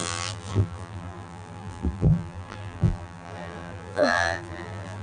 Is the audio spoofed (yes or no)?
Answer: yes